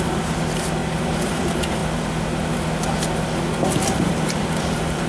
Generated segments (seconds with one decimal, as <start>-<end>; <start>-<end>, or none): 0.0-0.8; 1.3-1.8; 3.8-5.1